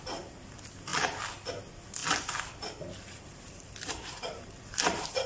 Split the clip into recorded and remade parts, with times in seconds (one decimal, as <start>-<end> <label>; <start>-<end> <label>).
0.0-2.0 recorded; 2.0-5.3 remade